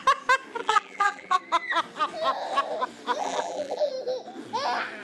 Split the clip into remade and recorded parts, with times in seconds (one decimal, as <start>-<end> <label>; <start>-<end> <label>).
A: 0.0-0.6 recorded; 0.6-1.4 remade; 1.4-3.2 recorded; 3.2-3.9 remade; 3.9-5.0 recorded